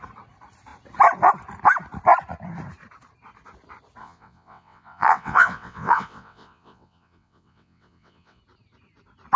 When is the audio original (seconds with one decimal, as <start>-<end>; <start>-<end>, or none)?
0.0-4.0; 8.4-9.4